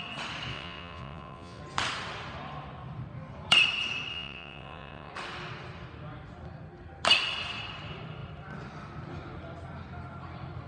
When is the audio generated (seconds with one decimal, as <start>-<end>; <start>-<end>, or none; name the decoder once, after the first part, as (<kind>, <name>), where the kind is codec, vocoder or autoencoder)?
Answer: 0.5-1.6 (vocoder, WaveNeXt); 4.1-5.1